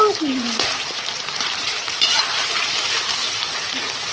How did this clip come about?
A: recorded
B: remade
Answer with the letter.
B